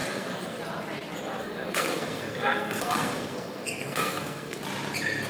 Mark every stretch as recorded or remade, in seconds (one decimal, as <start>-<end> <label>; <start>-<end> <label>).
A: 0.0-0.6 remade; 0.6-1.4 recorded; 1.4-4.6 remade; 4.6-5.3 recorded

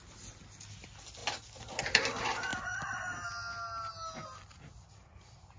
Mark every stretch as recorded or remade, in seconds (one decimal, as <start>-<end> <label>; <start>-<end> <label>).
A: 0.0-5.6 recorded

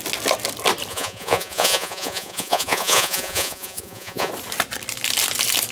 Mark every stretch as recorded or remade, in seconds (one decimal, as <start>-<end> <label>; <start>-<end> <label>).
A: 0.0-0.9 recorded; 0.9-4.3 remade; 4.3-5.7 recorded

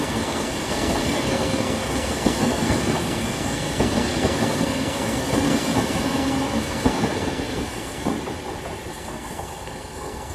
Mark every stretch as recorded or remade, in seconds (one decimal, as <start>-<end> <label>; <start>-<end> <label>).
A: 0.0-8.1 remade; 8.1-8.9 recorded; 8.9-10.3 remade

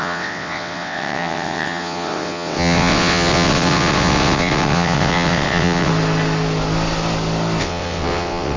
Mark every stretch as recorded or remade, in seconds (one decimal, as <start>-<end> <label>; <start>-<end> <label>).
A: 0.0-5.9 remade; 5.9-7.6 recorded; 7.6-8.6 remade

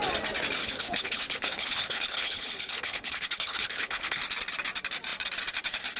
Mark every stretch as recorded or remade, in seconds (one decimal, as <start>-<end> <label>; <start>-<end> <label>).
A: 0.0-0.6 recorded; 0.6-4.2 remade; 4.2-6.0 recorded

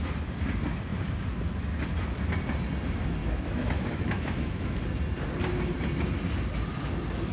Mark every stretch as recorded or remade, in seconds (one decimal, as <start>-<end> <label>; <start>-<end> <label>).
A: 0.0-3.2 recorded; 3.2-4.8 remade; 4.8-7.3 recorded

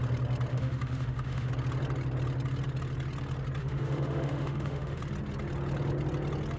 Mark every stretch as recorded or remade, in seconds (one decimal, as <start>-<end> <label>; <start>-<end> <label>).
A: 0.0-0.5 recorded; 0.5-1.5 remade; 1.5-3.6 recorded; 3.6-5.0 remade; 5.0-6.6 recorded